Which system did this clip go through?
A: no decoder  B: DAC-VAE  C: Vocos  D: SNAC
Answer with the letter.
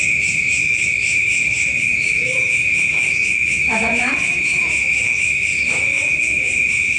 B